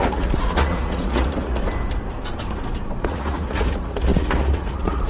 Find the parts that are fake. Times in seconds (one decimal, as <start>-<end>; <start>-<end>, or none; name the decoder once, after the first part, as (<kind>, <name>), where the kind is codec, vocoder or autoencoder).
0.0-1.6 (vocoder, Vocos); 3.0-5.1